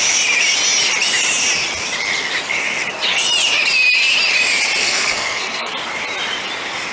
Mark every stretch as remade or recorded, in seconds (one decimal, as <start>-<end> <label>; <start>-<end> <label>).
0.0-4.8 recorded; 4.8-5.7 remade; 5.7-6.9 recorded